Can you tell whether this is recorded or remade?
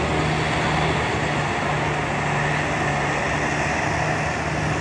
recorded